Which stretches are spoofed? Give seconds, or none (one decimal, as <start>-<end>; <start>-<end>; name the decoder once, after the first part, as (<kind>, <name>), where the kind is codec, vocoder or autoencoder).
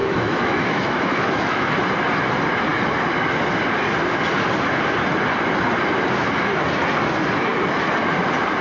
0.0-1.7 (autoencoder, DAC-VAE)